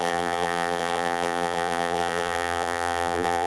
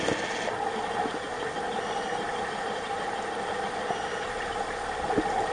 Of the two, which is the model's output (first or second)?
first